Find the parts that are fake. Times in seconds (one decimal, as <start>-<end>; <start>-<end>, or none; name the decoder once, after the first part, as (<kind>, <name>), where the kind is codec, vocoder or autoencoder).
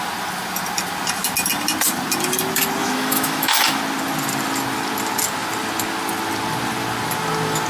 2.8-3.8 (autoencoder, DAC-VAE)